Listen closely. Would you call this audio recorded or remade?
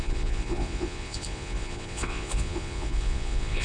remade